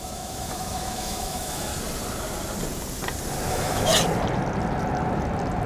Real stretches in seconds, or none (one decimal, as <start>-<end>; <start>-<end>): 1.7-3.5; 3.9-5.7